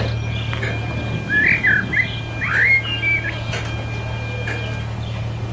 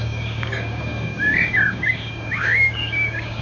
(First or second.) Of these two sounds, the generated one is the second